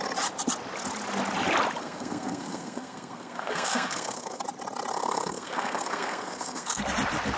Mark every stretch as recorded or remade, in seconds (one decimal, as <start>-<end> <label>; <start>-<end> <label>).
0.0-1.8 recorded; 1.8-4.4 remade; 4.4-4.9 recorded; 4.9-6.8 remade; 6.8-7.4 recorded